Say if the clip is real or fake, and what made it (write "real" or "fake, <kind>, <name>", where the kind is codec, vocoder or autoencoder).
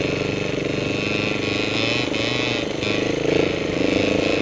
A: real